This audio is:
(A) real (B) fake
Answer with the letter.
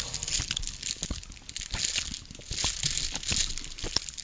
A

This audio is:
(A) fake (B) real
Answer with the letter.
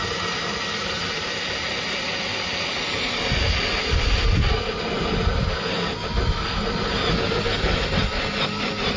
B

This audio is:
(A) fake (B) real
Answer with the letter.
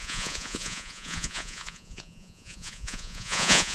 A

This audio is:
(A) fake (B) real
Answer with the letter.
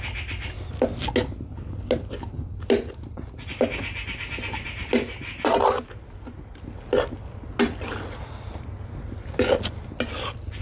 B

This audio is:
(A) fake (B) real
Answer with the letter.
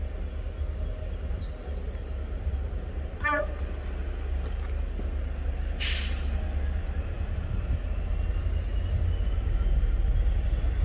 B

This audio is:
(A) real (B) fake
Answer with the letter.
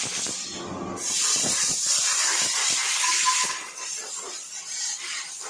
A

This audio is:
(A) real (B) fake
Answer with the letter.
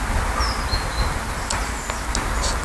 A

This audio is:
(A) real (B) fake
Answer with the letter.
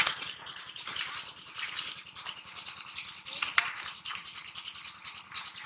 A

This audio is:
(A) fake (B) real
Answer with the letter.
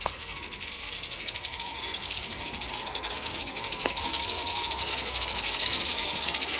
A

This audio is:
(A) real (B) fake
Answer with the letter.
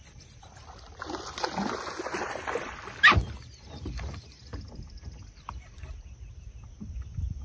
A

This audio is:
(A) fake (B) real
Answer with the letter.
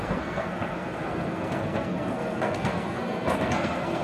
A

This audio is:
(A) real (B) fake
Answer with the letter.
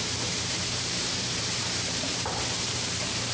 B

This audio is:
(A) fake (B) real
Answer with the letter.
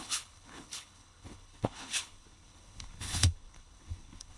A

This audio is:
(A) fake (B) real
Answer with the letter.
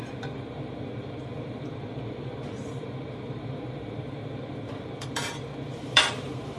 A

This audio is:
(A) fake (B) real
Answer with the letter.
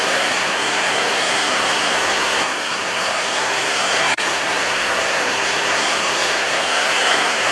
A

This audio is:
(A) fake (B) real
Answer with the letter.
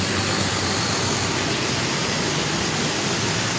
B